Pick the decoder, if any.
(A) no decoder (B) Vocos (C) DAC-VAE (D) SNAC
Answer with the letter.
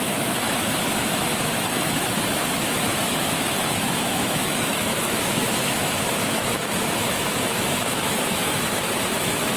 C